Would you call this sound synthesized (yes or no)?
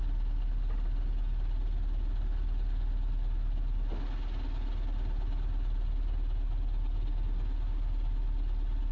no